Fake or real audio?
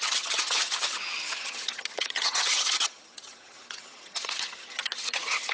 fake